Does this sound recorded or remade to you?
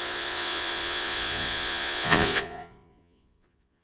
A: remade